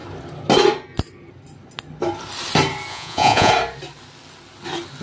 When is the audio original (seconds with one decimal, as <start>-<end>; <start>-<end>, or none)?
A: 0.0-2.9; 3.5-5.0